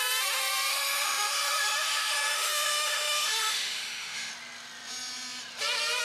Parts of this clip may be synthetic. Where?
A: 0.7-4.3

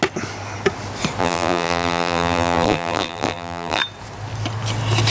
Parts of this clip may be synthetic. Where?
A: 1.2-3.8